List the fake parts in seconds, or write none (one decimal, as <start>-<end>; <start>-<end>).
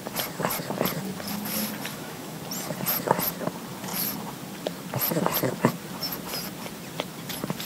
1.9-2.4